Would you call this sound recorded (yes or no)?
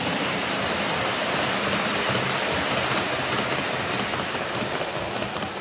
yes